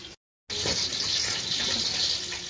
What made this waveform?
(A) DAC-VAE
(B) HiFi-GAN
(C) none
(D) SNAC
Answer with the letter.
C